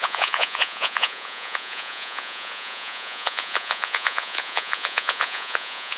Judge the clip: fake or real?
fake